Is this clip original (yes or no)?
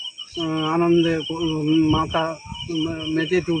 yes